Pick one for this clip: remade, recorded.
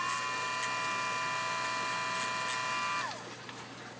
recorded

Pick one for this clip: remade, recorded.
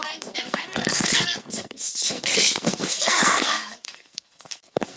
remade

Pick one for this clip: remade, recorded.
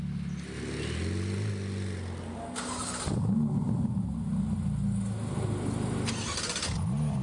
recorded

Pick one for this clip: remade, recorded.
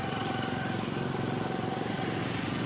recorded